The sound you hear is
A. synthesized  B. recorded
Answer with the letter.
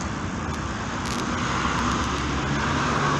B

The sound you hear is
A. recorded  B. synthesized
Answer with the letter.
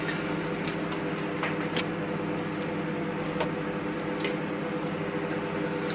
A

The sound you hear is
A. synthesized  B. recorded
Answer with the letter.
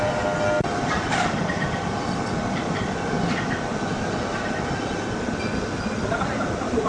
B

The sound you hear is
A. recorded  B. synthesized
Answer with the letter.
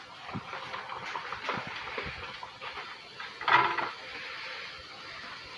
A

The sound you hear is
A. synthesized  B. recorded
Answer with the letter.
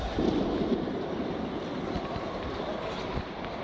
A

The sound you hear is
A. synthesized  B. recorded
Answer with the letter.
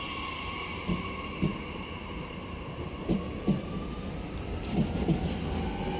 B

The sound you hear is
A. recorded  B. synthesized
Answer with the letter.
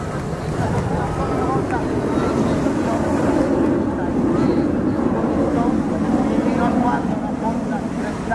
A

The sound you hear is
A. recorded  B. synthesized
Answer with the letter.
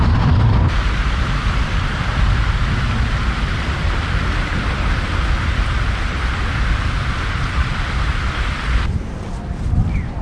B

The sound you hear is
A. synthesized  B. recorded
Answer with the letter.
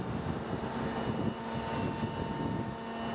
B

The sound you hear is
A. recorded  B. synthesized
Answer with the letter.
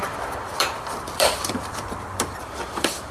B